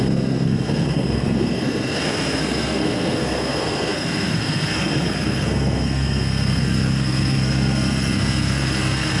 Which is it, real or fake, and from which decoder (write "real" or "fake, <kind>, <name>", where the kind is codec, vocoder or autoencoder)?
fake, codec, SNAC